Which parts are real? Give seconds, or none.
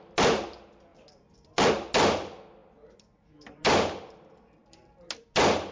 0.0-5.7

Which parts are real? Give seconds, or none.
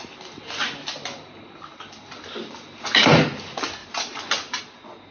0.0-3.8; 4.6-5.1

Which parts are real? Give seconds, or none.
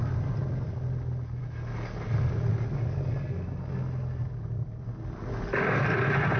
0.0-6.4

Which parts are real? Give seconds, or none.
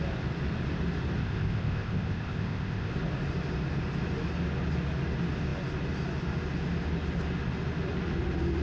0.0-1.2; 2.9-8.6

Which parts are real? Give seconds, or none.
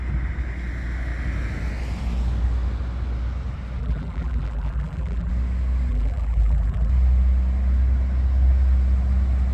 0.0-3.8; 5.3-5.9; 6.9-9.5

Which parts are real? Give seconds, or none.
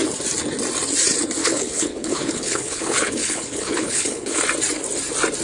0.0-1.4; 4.4-5.4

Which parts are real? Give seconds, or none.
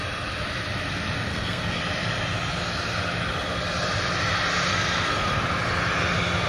0.0-1.3; 1.8-4.7; 5.4-6.5